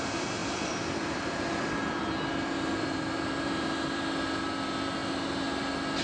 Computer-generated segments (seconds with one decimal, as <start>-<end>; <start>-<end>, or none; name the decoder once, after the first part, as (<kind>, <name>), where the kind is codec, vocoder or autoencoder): 0.4-4.0 (vocoder, BigVGAN v2)